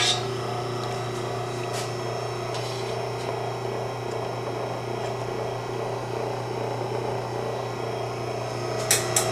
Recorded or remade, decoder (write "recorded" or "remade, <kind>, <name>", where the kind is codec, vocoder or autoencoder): recorded